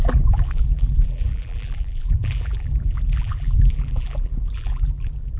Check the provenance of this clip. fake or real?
fake